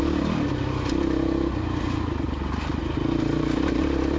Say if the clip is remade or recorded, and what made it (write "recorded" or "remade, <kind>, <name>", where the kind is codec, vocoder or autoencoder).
recorded